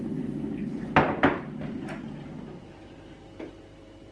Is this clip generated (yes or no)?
no